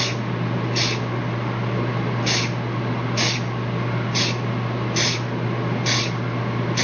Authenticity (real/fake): real